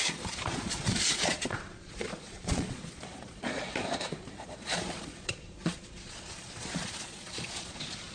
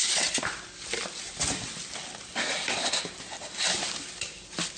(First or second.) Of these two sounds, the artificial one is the first